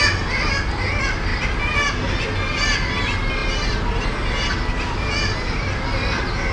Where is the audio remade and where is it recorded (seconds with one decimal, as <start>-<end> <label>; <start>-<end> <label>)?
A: 0.0-6.5 recorded